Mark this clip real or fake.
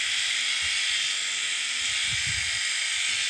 real